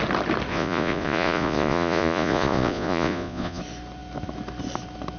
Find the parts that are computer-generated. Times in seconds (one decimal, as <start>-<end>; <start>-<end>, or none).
0.5-3.6